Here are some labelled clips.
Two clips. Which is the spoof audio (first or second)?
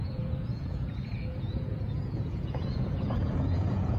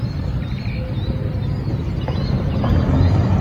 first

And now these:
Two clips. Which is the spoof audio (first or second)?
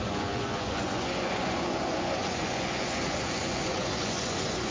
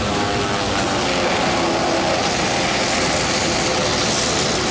first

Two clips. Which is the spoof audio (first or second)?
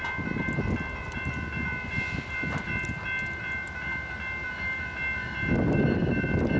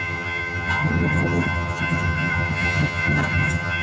second